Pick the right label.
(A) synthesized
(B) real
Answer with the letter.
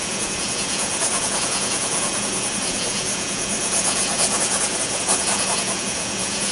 A